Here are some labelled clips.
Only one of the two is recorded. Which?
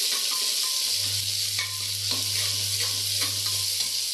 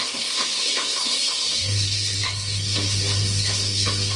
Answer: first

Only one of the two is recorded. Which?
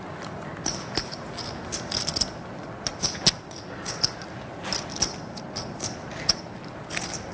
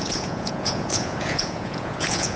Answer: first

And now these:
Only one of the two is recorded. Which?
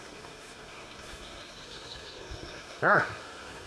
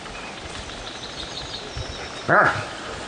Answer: second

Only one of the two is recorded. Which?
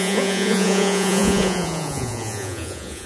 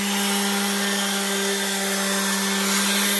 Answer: second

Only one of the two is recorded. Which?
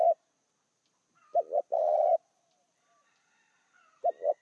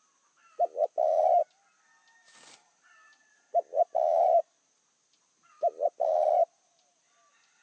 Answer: second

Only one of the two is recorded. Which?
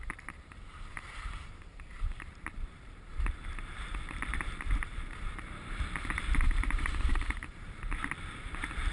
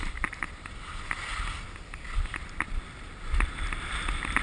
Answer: second